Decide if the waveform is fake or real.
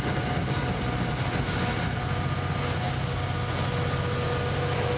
real